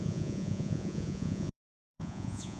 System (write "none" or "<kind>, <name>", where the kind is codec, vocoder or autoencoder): vocoder, Vocos